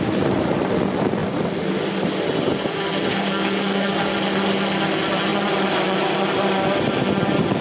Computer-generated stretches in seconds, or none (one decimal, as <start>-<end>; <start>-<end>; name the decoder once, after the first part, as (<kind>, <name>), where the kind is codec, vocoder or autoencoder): 3.1-4.0 (codec, DAC)